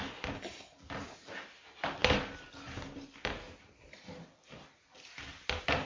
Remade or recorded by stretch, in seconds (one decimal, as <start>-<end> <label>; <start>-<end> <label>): 0.0-5.9 recorded

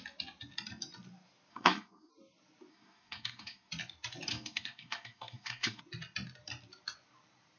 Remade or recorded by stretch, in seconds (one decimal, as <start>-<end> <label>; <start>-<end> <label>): 0.0-1.5 recorded; 1.5-2.1 remade; 2.1-2.7 recorded; 2.7-3.7 remade; 3.7-4.3 recorded; 4.3-5.8 remade; 5.8-7.6 recorded

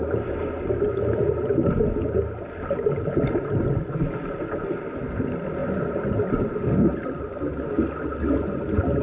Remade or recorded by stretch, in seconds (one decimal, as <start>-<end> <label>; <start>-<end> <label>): 0.0-9.0 recorded

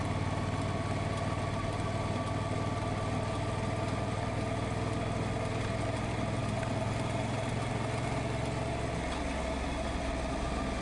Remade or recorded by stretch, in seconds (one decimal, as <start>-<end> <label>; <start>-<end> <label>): 0.0-10.8 recorded

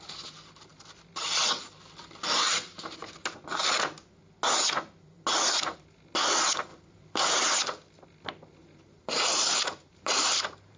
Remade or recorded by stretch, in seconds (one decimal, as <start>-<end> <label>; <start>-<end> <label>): 0.0-8.5 recorded; 8.5-10.8 remade

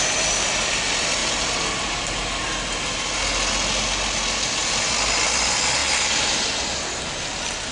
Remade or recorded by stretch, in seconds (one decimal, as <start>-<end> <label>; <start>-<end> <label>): 0.0-7.7 recorded

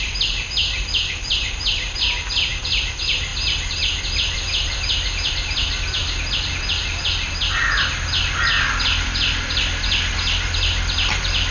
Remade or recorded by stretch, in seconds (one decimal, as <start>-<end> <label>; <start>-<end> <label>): 0.0-11.5 recorded

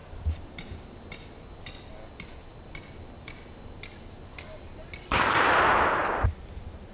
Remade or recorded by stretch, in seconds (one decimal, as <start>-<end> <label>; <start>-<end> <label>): 0.0-6.9 recorded